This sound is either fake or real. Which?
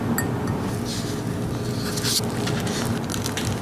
real